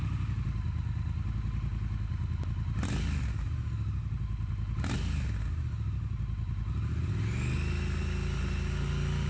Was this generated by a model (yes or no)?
no